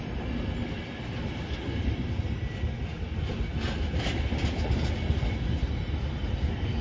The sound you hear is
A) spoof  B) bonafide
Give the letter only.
B